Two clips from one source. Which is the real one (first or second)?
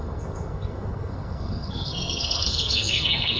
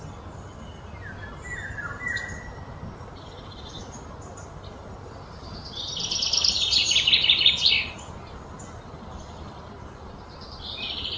second